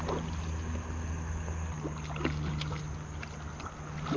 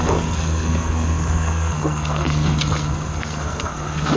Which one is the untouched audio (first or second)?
first